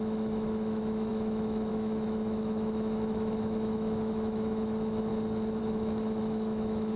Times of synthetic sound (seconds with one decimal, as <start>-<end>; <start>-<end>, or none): 0.0-5.1; 5.6-7.0